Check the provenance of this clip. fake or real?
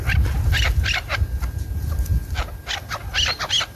real